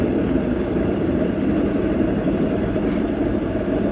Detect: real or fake fake